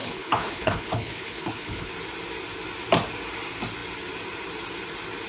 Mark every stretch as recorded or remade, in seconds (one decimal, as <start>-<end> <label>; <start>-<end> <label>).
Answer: 0.0-1.9 remade; 1.9-5.3 recorded